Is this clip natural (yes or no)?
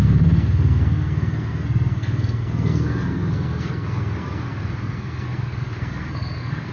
no